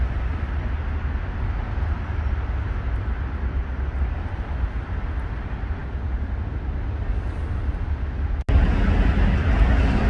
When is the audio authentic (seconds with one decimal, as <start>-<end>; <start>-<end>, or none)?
0.0-10.1